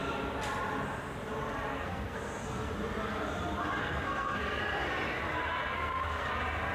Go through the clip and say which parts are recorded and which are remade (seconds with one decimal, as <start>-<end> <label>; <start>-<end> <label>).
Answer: 0.0-1.7 recorded; 1.7-2.7 remade; 2.7-3.8 recorded; 3.8-4.6 remade; 4.6-5.6 recorded; 5.6-6.3 remade; 6.3-6.7 recorded